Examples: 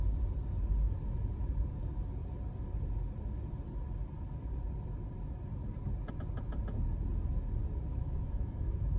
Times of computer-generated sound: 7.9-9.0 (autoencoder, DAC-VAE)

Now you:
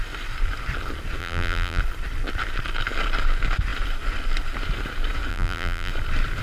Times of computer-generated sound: 1.2-1.8 (vocoder, BigVGAN v2); 5.3-5.9

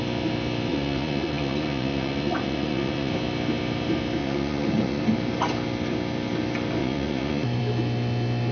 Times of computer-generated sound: 0.7-3.1 (vocoder, Vocos); 4.2-5.0; 6.8-7.6

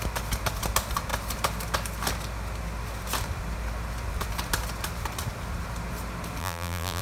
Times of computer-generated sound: 6.4-7.0 (vocoder, BigVGAN v2)

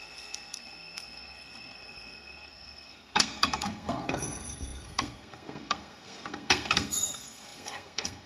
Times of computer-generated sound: 0.0-8.3 (codec, SNAC)

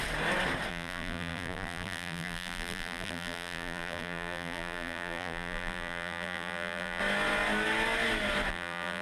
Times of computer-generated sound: 0.7-7.0 (vocoder, BigVGAN v2); 8.5-9.0

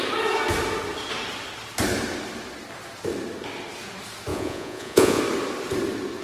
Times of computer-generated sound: 4.3-5.2 (vocoder, Vocos)

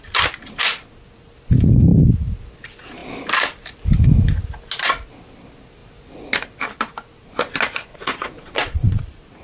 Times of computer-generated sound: 7.9-9.0 (vocoder, Vocos)